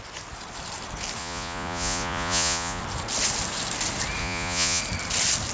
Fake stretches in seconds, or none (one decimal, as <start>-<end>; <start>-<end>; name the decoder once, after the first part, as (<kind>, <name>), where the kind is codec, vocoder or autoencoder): 1.2-2.8 (vocoder, Vocos); 4.2-4.8